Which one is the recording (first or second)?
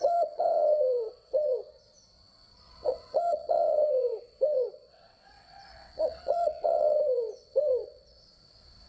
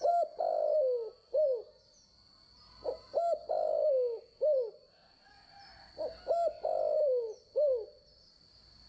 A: second